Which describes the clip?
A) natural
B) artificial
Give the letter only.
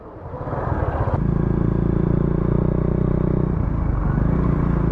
A